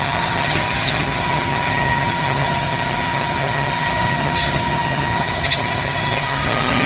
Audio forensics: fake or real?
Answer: fake